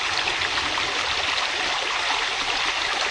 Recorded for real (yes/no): yes